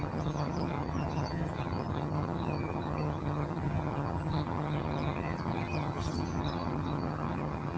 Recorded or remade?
remade